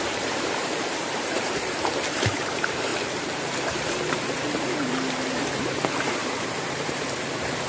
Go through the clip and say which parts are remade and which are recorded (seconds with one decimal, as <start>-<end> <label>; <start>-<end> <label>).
0.0-7.7 remade